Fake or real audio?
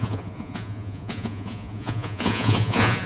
fake